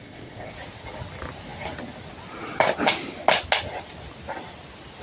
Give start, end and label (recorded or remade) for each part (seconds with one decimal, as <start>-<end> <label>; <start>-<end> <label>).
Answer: 0.0-0.5 remade; 0.5-5.0 recorded